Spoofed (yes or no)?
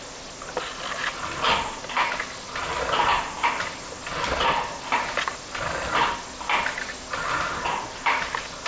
no